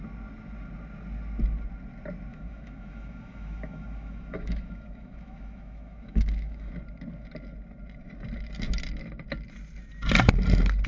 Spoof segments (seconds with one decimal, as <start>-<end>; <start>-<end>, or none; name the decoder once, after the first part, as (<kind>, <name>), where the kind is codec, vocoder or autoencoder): 2.3-6.7 (autoencoder, DAC-VAE)